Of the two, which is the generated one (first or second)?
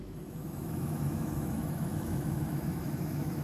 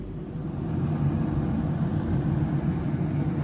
first